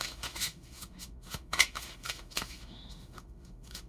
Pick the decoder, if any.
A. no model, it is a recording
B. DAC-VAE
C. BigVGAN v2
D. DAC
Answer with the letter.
B